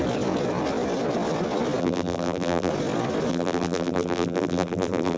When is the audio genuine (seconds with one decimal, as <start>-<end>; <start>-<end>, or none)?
0.0-1.8; 2.7-3.3